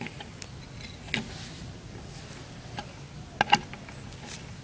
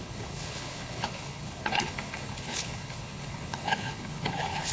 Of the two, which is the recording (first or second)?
first